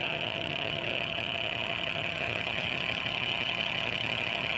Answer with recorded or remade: remade